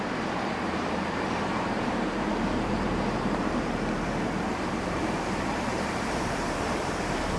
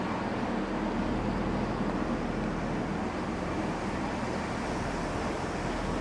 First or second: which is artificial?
first